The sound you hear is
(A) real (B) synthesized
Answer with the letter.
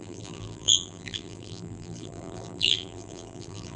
B